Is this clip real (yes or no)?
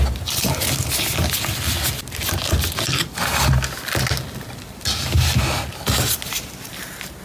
yes